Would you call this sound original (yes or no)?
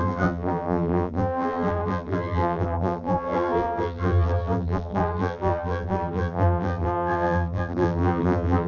no